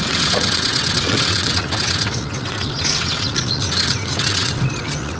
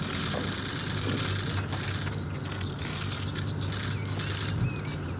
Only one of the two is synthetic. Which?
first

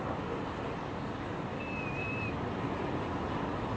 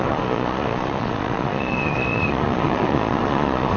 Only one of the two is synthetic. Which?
second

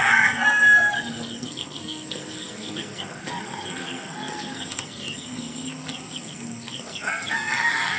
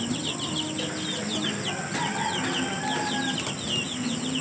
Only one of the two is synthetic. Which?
first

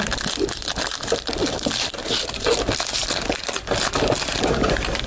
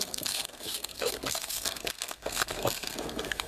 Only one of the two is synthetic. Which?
second